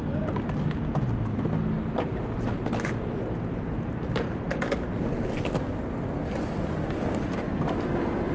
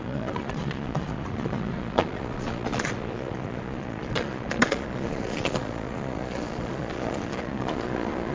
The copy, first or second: second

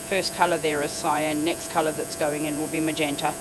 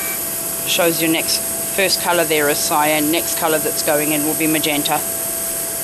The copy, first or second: first